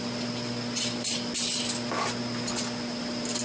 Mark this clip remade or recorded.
recorded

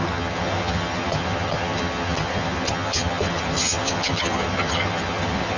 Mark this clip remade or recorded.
remade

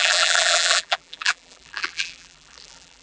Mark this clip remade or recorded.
remade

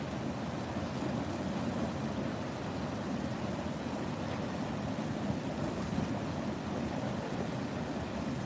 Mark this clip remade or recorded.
recorded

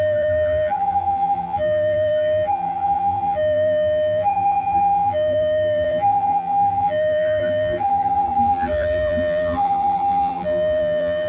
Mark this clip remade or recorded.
remade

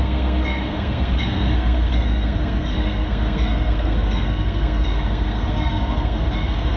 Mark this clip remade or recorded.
remade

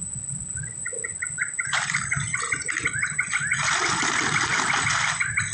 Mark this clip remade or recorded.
recorded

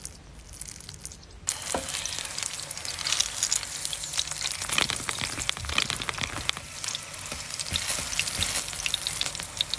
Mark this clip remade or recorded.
recorded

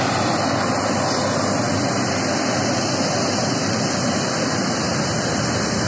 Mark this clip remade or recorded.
recorded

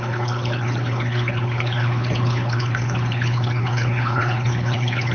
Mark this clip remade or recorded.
remade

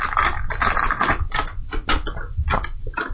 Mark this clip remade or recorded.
recorded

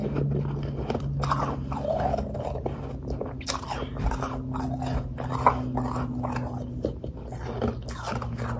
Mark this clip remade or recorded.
recorded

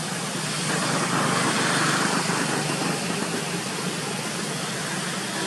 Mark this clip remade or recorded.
recorded